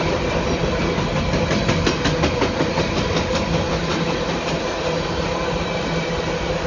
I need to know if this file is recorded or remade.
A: recorded